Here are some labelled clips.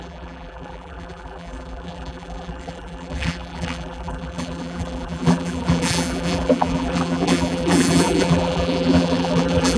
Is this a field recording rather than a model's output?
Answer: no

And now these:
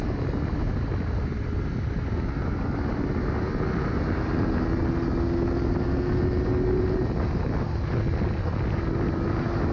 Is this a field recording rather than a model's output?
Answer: yes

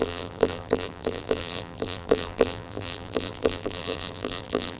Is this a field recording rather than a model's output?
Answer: no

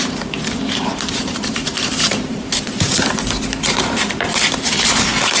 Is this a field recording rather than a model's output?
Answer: no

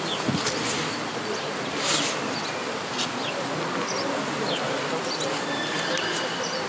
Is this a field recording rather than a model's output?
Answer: yes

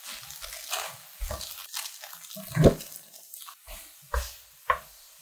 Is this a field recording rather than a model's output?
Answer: yes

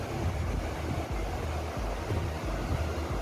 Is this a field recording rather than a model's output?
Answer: yes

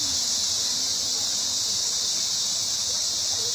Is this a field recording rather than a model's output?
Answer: no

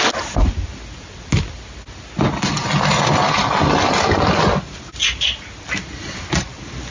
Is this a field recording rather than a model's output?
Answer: yes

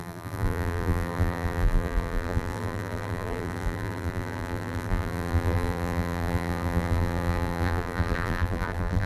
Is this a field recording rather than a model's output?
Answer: no